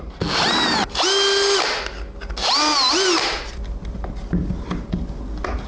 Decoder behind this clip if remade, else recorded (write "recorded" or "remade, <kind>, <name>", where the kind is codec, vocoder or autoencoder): recorded